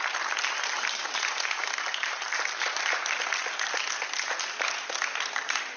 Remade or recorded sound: remade